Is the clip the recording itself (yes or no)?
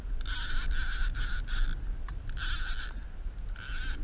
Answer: yes